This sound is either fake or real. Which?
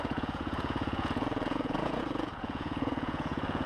fake